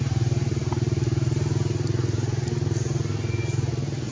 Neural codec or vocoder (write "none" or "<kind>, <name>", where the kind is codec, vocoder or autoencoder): none